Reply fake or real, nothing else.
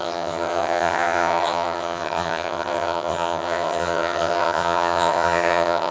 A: fake